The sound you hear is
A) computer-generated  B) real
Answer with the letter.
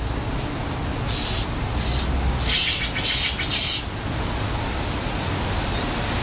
B